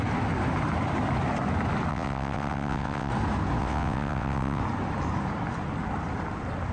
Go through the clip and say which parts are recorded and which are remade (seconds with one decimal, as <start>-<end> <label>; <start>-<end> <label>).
0.0-1.9 recorded; 1.9-3.1 remade; 3.1-3.6 recorded; 3.6-4.6 remade; 4.6-6.7 recorded